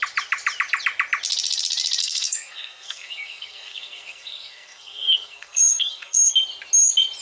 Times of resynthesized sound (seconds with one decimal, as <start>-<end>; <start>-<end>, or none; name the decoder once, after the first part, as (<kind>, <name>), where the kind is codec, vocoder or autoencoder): 2.0-6.3 (codec, SNAC)